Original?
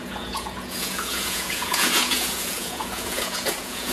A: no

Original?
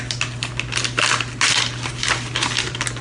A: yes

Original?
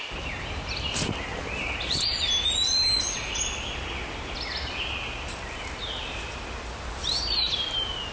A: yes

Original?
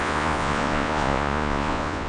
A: no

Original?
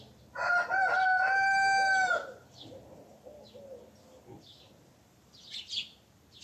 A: yes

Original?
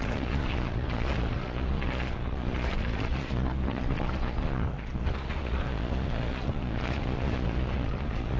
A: no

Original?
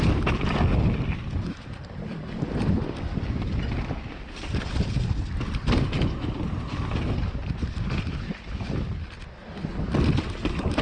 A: yes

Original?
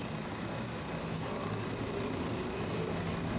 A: yes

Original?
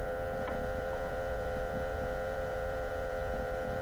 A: no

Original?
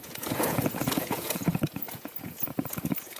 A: no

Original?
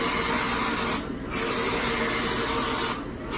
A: yes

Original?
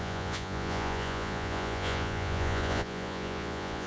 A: no